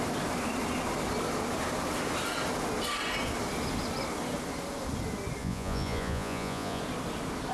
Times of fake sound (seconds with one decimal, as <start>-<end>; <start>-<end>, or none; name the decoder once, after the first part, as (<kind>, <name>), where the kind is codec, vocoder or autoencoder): 5.4-6.8 (vocoder, Vocos)